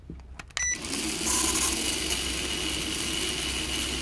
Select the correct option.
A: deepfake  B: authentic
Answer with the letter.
B